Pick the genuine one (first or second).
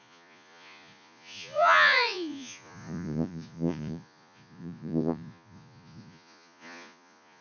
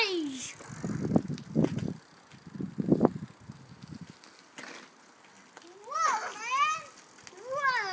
second